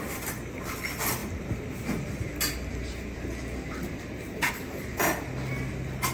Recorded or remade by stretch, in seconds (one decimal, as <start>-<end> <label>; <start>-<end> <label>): 0.0-6.1 recorded